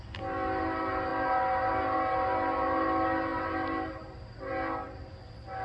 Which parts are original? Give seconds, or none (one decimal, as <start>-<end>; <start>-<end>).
0.0-5.6